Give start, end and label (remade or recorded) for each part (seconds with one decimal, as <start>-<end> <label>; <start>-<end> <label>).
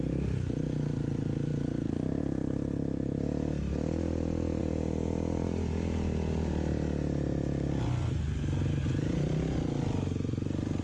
0.0-10.8 recorded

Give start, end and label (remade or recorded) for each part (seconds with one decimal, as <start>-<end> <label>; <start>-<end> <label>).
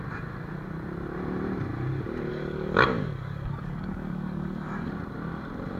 0.0-2.3 recorded; 2.3-4.9 remade; 4.9-5.8 recorded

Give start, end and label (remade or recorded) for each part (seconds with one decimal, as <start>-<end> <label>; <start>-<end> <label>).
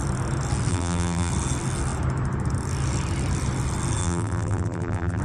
0.0-0.7 recorded; 0.7-1.3 remade; 1.3-4.0 recorded; 4.0-5.2 remade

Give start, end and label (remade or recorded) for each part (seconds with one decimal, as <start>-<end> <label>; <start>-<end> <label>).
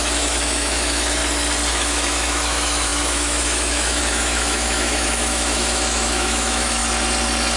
0.0-1.2 remade; 1.2-1.7 recorded; 1.7-6.8 remade; 6.8-7.6 recorded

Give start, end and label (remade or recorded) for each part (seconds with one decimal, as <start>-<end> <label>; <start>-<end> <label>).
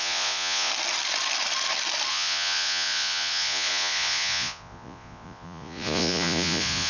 0.0-0.7 remade; 0.7-2.1 recorded; 2.1-6.9 remade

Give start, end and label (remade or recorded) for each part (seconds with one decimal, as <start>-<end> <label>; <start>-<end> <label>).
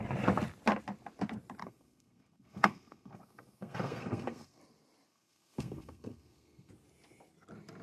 0.0-1.6 recorded; 1.6-4.6 remade; 4.6-5.1 recorded; 5.1-6.7 remade; 6.7-7.8 recorded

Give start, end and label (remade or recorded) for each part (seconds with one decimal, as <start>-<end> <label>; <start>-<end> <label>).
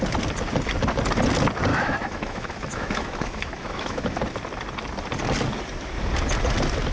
0.0-1.7 recorded; 1.7-4.2 remade; 4.2-6.9 recorded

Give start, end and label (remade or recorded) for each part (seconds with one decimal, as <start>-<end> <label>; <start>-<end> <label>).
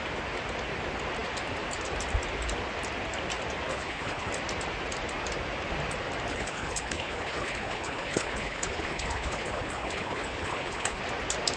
0.0-3.7 recorded; 3.7-4.3 remade; 4.3-6.3 recorded; 6.3-11.0 remade; 11.0-11.6 recorded